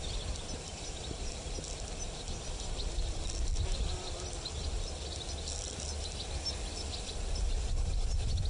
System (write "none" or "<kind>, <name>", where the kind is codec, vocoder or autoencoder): none